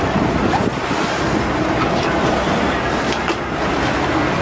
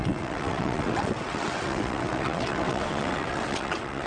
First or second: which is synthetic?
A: second